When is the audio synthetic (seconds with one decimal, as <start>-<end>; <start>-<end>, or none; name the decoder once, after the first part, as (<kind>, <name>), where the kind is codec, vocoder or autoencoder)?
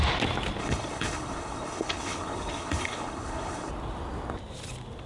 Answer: 0.6-3.7 (codec, HILCodec)